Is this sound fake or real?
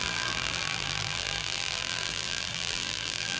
fake